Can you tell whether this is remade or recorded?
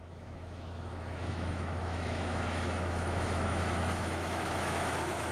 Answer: remade